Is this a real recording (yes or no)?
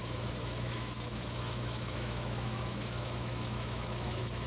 no